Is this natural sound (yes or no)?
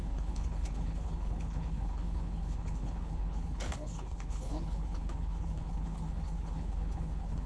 no